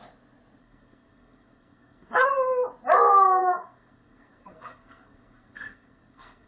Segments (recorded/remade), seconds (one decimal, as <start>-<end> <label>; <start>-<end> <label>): 0.0-0.6 recorded; 0.6-2.3 remade; 2.3-3.4 recorded; 3.4-6.5 remade